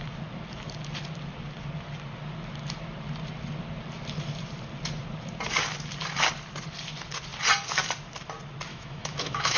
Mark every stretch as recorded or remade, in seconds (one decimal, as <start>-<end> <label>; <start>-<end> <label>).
0.0-8.7 recorded; 8.7-9.6 remade